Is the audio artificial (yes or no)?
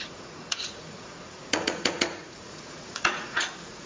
yes